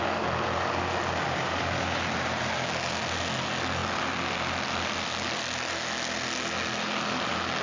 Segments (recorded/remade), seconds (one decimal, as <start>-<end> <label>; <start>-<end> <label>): 0.0-7.6 recorded